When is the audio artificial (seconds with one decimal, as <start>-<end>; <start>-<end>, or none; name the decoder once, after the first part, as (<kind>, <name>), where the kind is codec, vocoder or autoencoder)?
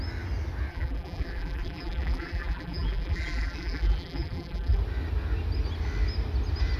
0.7-4.8 (vocoder, BigVGAN v2)